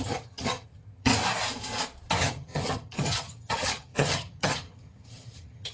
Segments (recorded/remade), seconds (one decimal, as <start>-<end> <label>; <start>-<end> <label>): 0.0-1.1 remade; 1.1-2.2 recorded; 2.2-5.7 remade